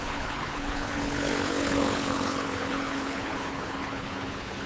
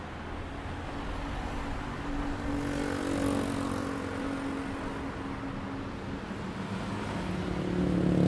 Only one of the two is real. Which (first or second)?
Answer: second